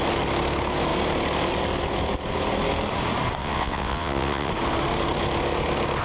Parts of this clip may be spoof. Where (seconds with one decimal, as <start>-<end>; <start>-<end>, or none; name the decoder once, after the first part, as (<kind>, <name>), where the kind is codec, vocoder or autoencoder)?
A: 3.4-4.5 (vocoder, WaveNeXt)